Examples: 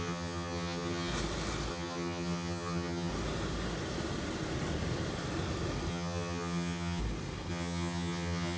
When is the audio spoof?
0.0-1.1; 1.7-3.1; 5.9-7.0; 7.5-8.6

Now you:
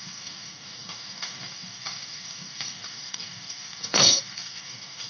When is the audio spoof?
0.0-5.1

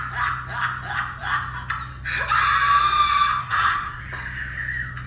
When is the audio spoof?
3.4-4.0

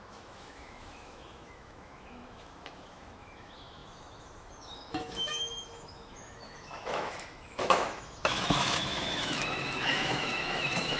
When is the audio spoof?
0.0-11.0